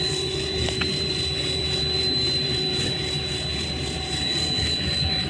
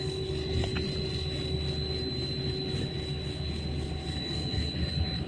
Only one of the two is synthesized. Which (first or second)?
first